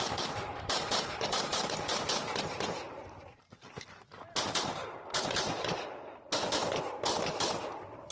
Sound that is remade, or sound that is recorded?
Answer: remade